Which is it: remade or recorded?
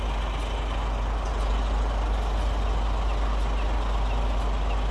recorded